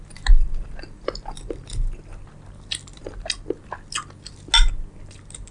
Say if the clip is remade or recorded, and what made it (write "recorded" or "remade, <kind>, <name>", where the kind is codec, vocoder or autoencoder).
recorded